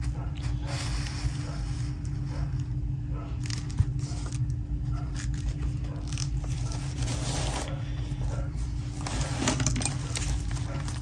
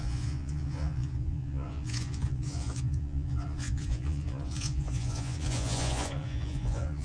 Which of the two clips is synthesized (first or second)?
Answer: second